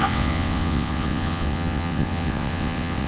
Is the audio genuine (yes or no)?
no